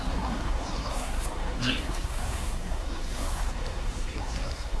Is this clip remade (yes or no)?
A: yes